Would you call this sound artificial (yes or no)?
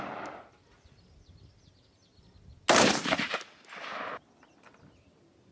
no